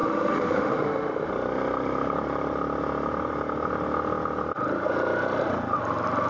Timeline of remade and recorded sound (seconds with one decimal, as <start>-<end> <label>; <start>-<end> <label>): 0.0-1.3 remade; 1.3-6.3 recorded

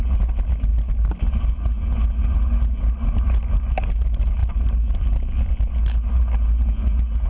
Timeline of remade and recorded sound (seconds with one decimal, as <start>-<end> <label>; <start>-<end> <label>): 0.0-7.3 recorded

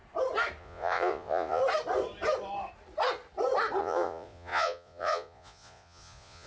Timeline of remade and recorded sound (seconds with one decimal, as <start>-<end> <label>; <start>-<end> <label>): 0.0-0.6 recorded; 0.6-1.6 remade; 1.6-3.8 recorded; 3.8-6.5 remade

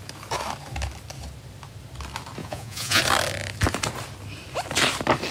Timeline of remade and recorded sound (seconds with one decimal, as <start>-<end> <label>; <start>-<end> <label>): 0.0-2.4 recorded; 2.4-3.0 remade; 3.0-5.3 recorded

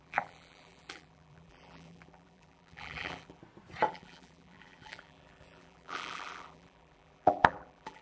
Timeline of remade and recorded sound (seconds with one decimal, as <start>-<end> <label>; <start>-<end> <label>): 0.0-3.4 remade; 3.4-3.9 recorded; 3.9-8.0 remade